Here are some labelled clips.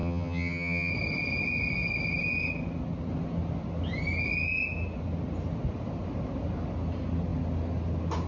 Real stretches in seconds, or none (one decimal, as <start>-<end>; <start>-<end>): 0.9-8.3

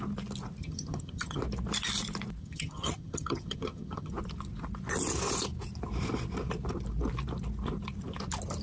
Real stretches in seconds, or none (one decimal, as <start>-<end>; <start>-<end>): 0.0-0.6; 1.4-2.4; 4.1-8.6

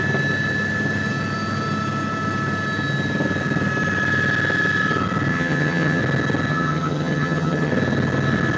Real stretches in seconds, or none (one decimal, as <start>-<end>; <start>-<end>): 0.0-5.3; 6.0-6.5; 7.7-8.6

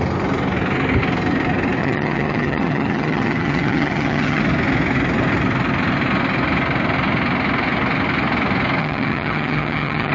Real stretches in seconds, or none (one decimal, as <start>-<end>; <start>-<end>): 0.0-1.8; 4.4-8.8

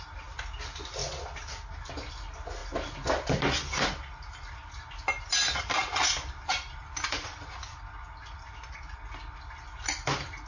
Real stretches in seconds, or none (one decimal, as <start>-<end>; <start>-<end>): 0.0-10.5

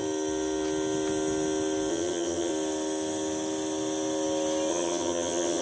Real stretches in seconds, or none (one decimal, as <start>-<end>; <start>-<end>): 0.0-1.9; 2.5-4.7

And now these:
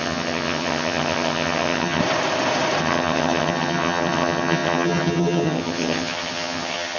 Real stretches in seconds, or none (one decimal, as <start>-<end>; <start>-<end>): 2.0-2.8